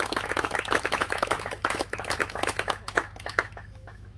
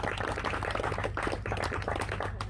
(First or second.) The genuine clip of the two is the second